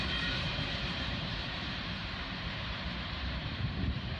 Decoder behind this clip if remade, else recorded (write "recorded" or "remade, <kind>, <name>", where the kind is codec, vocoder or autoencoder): remade, vocoder, BigVGAN v2